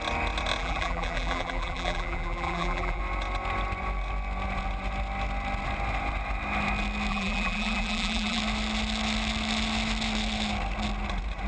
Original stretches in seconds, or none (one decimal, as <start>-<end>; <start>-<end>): 0.0-0.6; 3.0-7.1; 8.4-11.5